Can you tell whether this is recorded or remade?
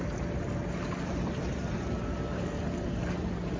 recorded